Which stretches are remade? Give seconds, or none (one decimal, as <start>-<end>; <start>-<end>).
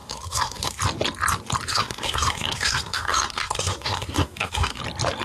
0.0-0.8; 1.7-4.8